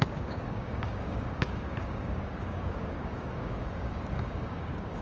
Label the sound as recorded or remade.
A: remade